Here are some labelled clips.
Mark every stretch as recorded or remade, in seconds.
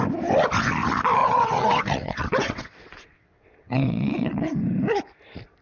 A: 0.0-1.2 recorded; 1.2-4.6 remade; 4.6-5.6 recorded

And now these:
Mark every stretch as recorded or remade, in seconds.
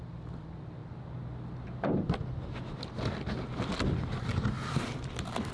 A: 0.0-5.5 recorded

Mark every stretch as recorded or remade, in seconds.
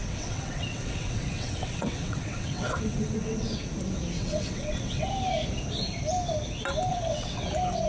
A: 0.0-3.7 remade; 3.7-4.2 recorded; 4.2-5.1 remade; 5.1-6.9 recorded; 6.9-7.5 remade; 7.5-7.9 recorded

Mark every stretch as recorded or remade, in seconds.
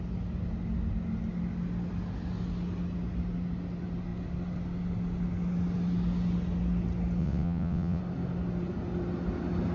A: 0.0-7.2 recorded; 7.2-8.0 remade; 8.0-9.7 recorded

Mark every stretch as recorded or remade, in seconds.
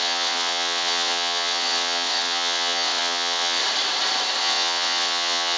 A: 0.0-3.6 remade; 3.6-4.4 recorded; 4.4-5.6 remade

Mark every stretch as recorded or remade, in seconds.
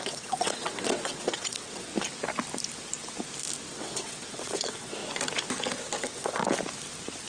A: 0.0-1.9 remade; 1.9-3.7 recorded; 3.7-5.0 remade; 5.0-6.0 recorded; 6.0-6.4 remade; 6.4-7.3 recorded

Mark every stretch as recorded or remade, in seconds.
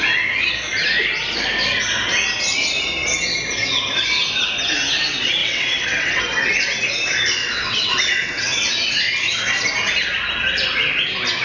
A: 0.0-5.4 recorded; 5.4-6.2 remade; 6.2-7.4 recorded; 7.4-8.7 remade; 8.7-11.4 recorded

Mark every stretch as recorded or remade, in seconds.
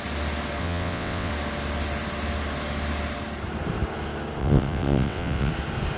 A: 0.0-0.6 recorded; 0.6-1.3 remade; 1.3-4.4 recorded; 4.4-5.5 remade; 5.5-6.0 recorded